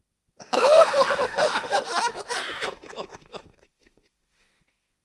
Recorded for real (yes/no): no